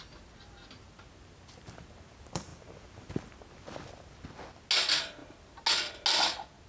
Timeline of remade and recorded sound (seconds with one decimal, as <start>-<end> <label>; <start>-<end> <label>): 0.0-6.7 recorded